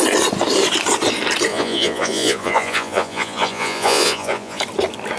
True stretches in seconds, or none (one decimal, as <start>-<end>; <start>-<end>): 0.0-1.5; 4.6-5.2

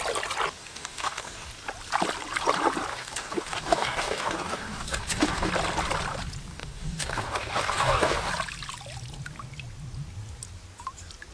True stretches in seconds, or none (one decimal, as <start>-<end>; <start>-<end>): 0.0-0.6; 1.5-2.9; 5.5-6.5; 8.3-11.3